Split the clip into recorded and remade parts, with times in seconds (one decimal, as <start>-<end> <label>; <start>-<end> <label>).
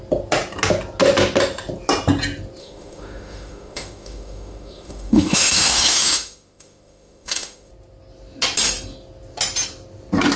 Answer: 0.0-2.6 recorded; 2.6-7.7 remade; 7.7-10.4 recorded